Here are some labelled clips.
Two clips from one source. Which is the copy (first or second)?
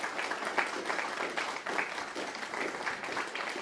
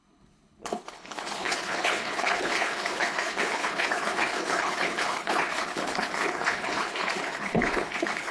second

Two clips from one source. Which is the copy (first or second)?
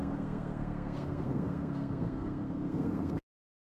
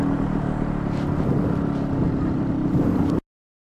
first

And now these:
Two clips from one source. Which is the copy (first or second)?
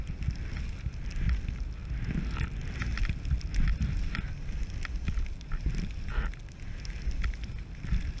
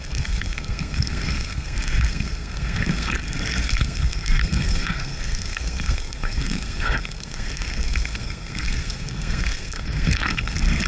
second